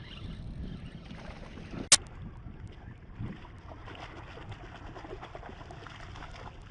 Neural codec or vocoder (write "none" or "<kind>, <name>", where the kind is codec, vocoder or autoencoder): none